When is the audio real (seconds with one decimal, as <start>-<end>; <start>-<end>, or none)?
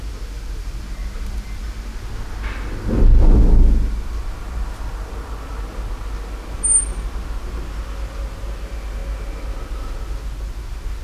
0.0-11.0